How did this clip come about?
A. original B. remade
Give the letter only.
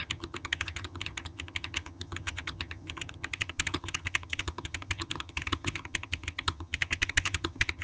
B